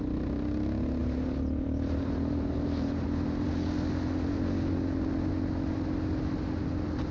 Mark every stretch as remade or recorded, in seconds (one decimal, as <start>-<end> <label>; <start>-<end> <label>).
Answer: 0.0-1.0 recorded; 1.0-3.5 remade; 3.5-7.1 recorded